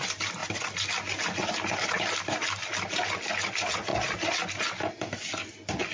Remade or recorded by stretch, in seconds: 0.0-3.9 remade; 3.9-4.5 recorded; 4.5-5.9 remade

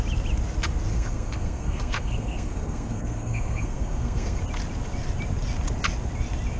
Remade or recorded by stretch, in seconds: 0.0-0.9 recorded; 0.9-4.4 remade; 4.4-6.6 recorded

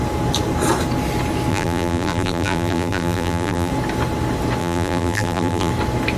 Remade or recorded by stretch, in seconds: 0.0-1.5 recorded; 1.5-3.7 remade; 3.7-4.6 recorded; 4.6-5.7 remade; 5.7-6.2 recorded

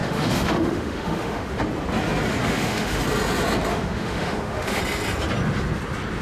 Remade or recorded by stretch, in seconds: 0.0-1.6 remade; 1.6-2.4 recorded; 2.4-3.0 remade; 3.0-3.7 recorded; 3.7-4.8 remade; 4.8-6.2 recorded

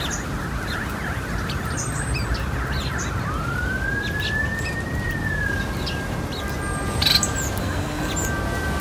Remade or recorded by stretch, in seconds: 0.0-7.6 recorded; 7.6-8.1 remade; 8.1-8.8 recorded